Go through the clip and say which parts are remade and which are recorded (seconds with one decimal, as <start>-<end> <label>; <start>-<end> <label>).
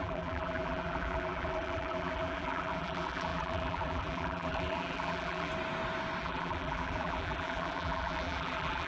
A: 0.0-5.5 remade; 5.5-6.2 recorded; 6.2-8.9 remade